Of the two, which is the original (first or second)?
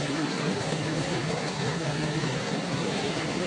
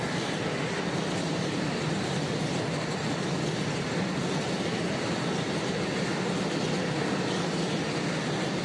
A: second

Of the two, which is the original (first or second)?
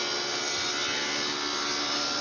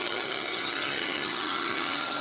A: first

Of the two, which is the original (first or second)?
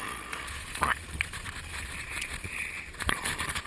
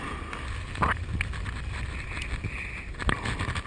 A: second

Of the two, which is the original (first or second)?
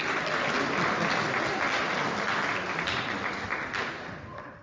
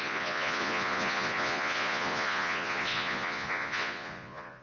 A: first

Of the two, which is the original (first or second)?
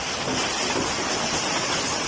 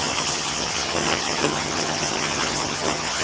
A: first